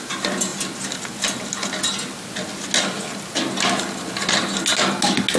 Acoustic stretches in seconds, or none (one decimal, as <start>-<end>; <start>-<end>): 0.0-5.4